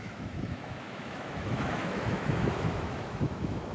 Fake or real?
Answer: fake